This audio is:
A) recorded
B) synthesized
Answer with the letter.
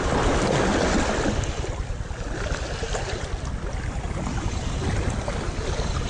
A